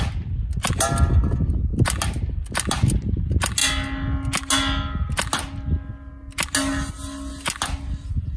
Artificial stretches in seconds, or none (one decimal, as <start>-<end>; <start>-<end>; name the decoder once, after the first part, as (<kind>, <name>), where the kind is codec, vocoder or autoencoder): none